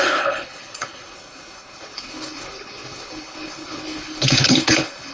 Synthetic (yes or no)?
yes